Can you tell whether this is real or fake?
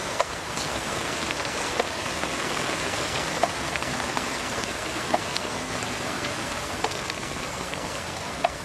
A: fake